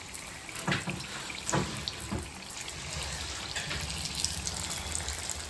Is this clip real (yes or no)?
yes